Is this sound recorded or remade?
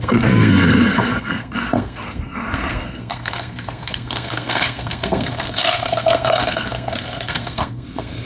remade